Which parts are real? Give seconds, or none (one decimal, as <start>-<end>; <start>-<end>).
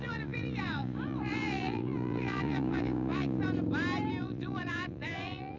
3.4-4.2